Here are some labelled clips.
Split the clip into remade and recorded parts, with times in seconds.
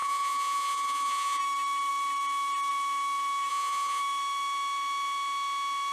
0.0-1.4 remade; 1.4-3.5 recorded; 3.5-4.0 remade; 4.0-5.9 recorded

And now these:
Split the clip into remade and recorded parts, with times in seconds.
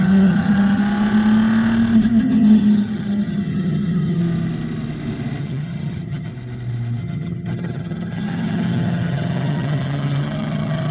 0.0-0.8 remade; 0.8-2.2 recorded; 2.2-4.2 remade; 4.2-5.4 recorded; 5.4-6.3 remade; 6.3-7.0 recorded; 7.0-10.9 remade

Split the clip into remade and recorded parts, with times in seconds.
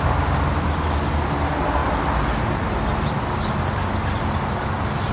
0.0-5.1 recorded